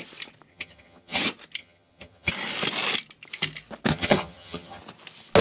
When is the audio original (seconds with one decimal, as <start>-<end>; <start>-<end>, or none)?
0.0-0.5; 1.2-1.6; 2.3-3.9; 4.8-5.4